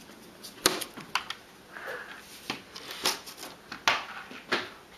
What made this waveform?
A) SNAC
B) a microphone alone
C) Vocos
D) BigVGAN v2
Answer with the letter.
B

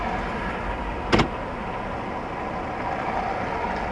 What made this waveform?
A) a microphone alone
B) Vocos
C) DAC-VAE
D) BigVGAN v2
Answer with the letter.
A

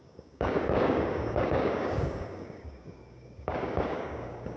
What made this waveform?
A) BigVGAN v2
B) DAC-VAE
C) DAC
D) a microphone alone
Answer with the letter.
C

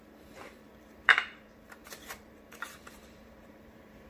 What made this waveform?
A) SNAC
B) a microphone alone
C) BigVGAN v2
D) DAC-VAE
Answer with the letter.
C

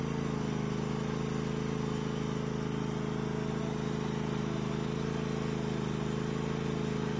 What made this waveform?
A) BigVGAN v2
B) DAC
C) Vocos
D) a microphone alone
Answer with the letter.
D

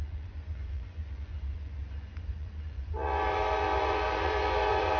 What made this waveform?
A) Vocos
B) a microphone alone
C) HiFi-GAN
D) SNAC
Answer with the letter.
A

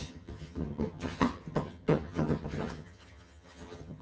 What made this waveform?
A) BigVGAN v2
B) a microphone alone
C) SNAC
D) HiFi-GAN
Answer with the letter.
D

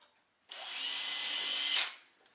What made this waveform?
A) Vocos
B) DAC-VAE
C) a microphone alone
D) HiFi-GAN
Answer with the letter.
C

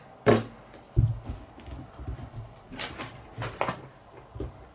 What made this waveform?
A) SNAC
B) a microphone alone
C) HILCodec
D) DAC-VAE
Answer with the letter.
B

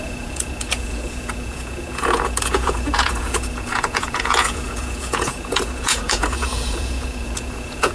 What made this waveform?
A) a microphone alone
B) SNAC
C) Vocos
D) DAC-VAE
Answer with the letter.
C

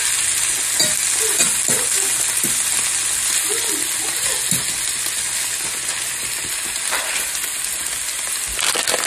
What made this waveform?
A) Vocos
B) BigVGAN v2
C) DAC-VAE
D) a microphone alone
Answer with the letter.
D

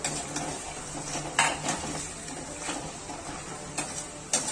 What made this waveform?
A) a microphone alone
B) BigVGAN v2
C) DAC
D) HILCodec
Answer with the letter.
B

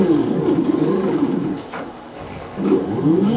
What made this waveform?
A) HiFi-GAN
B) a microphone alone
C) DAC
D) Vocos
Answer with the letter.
C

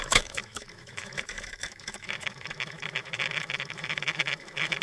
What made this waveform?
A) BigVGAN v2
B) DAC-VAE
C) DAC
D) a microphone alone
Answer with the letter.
B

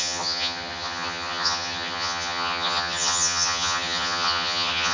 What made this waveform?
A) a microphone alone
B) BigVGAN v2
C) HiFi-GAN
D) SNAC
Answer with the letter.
C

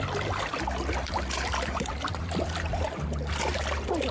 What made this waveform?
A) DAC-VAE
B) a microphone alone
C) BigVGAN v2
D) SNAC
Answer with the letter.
C